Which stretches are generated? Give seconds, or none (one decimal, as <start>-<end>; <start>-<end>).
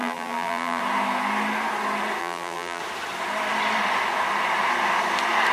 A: 0.0-0.8; 2.2-2.8